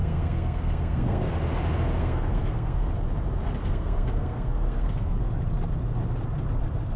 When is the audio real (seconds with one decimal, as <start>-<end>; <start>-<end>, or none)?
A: 1.3-2.0; 2.9-3.6; 5.2-7.0